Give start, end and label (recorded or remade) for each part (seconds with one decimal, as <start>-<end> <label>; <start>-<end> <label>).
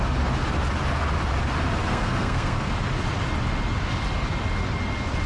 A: 0.0-1.9 recorded; 1.9-2.7 remade; 2.7-5.3 recorded